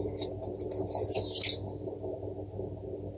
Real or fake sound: real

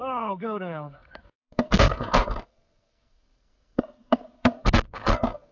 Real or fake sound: fake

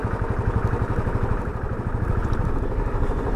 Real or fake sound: real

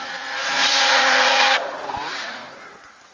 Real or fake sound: fake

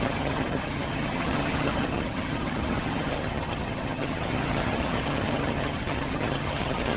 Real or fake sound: fake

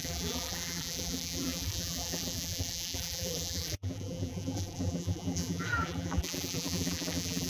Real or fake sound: fake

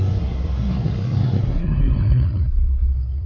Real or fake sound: fake